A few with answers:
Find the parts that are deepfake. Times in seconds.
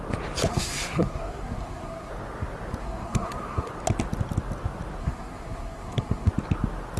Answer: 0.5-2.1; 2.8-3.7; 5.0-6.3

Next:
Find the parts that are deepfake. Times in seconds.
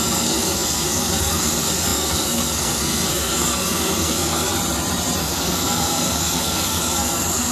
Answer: 0.0-4.5; 5.2-7.5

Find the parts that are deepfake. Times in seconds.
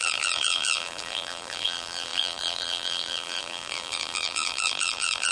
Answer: 0.0-5.3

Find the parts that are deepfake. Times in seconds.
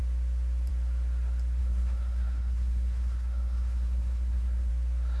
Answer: 1.6-4.7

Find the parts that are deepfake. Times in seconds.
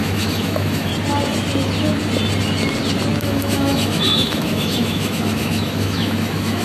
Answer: 0.0-0.9; 3.2-6.6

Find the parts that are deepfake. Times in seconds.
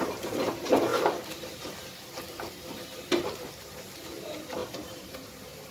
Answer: 0.0-5.7